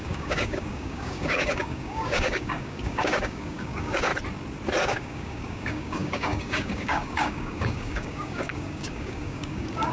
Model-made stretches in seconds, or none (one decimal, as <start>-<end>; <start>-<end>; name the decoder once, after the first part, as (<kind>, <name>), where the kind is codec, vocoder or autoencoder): 0.0-4.1 (codec, DAC); 4.8-9.9